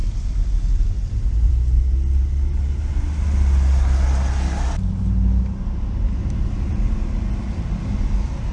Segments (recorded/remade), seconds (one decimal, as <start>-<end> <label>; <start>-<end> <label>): 0.0-8.5 recorded